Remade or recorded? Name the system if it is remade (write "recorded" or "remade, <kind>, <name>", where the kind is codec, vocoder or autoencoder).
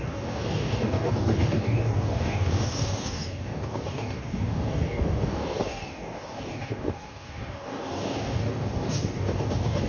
remade, codec, DAC